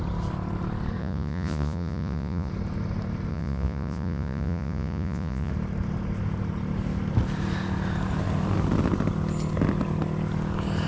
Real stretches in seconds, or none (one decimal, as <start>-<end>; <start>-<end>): 0.0-1.0; 2.5-3.3; 5.5-10.9